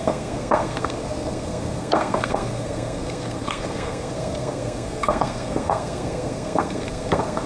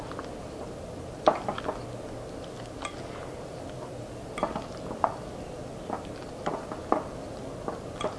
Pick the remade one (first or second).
first